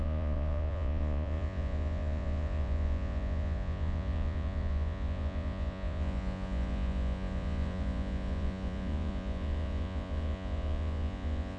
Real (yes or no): no